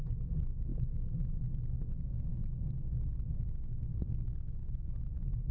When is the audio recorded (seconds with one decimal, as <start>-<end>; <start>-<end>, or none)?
0.0-2.3; 2.8-5.5